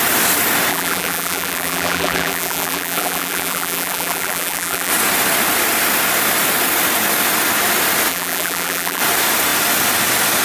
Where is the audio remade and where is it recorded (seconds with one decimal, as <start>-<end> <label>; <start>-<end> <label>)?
0.0-0.7 recorded; 0.7-4.9 remade; 4.9-8.1 recorded; 8.1-9.0 remade; 9.0-10.4 recorded